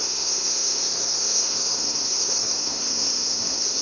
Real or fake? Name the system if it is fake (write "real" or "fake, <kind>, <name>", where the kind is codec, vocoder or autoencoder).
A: fake, codec, SNAC